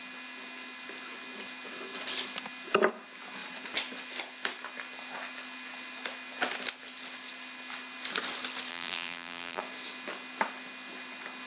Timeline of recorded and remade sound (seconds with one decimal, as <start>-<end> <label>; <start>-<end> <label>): 0.0-8.7 recorded; 8.7-9.6 remade; 9.6-11.5 recorded

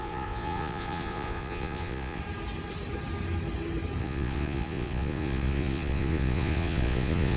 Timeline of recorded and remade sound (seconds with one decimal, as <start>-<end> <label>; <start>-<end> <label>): 0.0-2.2 remade; 2.2-4.0 recorded; 4.0-7.4 remade